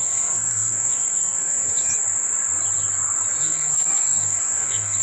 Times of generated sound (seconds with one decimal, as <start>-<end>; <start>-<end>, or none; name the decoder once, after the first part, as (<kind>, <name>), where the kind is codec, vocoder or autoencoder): 0.0-1.9 (codec, SNAC); 3.4-5.0